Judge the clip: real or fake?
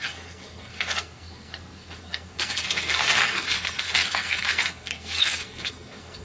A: fake